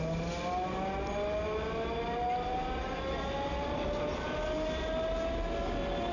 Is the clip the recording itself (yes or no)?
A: yes